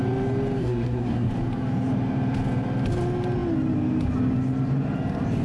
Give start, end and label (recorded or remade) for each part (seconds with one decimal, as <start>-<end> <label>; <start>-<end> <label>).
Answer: 0.0-0.6 recorded; 0.6-1.3 remade; 1.3-5.4 recorded